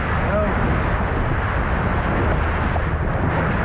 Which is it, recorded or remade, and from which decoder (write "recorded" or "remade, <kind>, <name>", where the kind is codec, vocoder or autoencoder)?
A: recorded